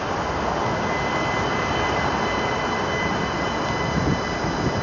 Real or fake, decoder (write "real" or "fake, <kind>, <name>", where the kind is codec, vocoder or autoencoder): real